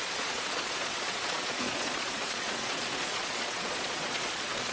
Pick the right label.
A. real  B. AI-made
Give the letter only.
B